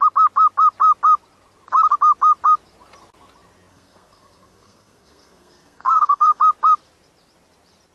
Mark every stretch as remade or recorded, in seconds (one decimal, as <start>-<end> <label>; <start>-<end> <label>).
0.0-3.7 recorded; 3.7-6.4 remade; 6.4-7.9 recorded